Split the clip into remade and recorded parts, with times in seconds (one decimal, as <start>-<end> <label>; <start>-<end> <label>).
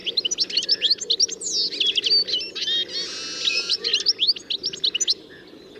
0.0-3.5 recorded; 3.5-3.9 remade; 3.9-5.8 recorded